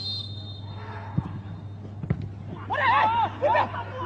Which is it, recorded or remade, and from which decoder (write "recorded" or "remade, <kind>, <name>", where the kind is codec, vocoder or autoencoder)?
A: recorded